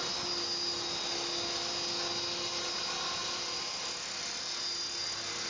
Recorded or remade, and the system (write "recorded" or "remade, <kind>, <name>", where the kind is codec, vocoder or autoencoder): recorded